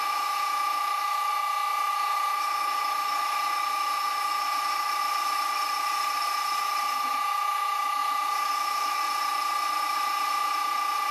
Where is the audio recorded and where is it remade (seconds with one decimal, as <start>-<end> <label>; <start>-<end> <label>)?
0.0-1.3 remade; 1.3-1.9 recorded; 1.9-5.0 remade; 5.0-7.0 recorded; 7.0-9.0 remade; 9.0-11.1 recorded